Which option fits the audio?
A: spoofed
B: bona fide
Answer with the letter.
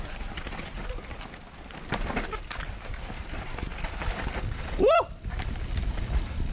B